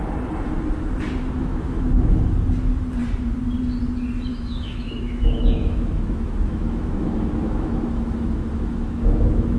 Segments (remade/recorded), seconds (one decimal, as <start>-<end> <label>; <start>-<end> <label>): 0.0-1.4 recorded; 1.4-1.9 remade; 1.9-4.3 recorded; 4.3-9.6 remade